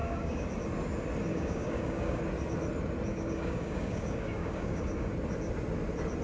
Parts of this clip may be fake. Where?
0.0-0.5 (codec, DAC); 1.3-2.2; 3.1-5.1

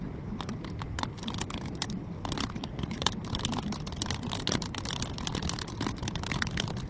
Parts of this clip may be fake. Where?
2.6-3.1 (vocoder, Vocos)

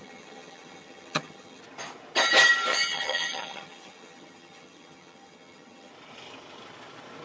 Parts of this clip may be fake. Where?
0.0-1.6 (vocoder, HiFi-GAN); 2.7-5.9

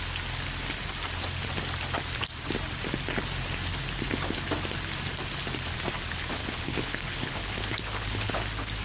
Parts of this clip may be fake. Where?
6.4-8.4 (codec, HILCodec)

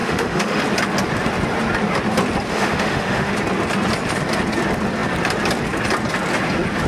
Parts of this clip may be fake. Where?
0.0-0.6 (autoencoder, DAC-VAE); 2.5-3.3

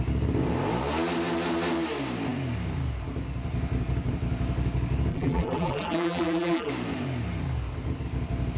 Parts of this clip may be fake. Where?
5.1-6.7 (vocoder, BigVGAN v2)